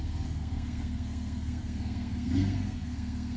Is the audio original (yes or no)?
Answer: no